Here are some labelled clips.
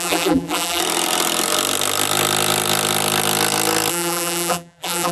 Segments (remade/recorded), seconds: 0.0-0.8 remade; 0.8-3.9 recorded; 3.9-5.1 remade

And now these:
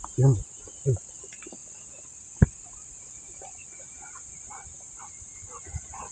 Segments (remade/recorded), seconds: 0.0-6.1 recorded